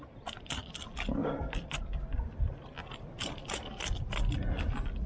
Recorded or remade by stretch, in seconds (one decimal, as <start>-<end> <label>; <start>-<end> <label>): 0.0-5.1 recorded